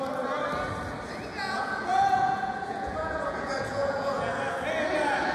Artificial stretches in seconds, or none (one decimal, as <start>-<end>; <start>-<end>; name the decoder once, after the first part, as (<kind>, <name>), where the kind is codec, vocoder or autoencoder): 1.3-4.3 (vocoder, Vocos)